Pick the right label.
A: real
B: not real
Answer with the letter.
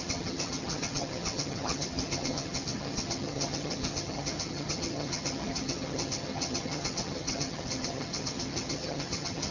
B